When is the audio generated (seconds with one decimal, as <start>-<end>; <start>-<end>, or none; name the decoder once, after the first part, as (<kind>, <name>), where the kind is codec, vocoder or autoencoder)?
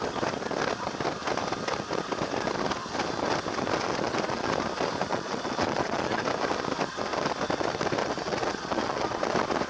3.9-4.5 (vocoder, Vocos); 5.1-6.2; 8.0-9.2